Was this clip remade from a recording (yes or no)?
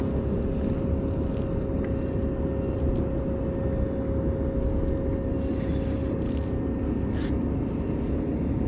no